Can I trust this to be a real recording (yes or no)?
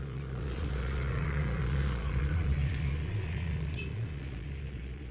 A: no